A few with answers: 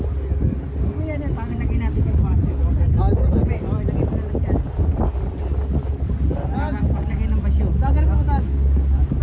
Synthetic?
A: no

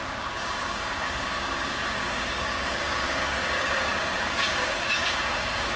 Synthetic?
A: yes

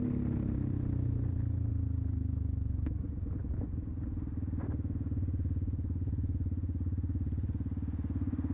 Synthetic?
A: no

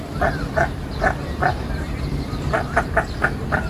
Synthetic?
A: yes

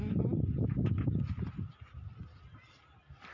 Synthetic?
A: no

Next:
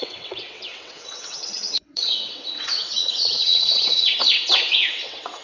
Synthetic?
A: yes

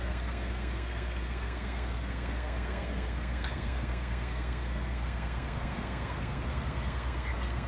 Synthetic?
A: yes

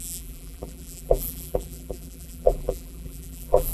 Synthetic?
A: yes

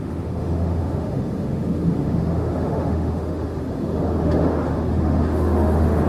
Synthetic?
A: yes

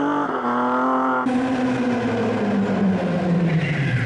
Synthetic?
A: no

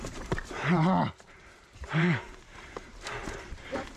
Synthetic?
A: yes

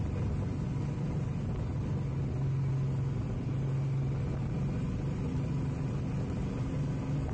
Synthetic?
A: no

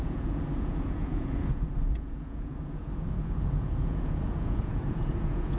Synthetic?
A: yes